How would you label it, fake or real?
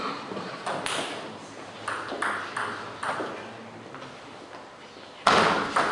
real